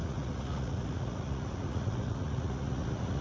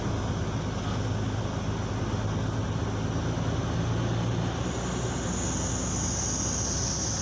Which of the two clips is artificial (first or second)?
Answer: first